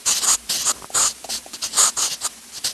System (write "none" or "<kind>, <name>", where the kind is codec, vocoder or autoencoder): none